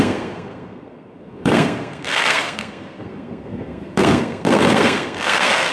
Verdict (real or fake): fake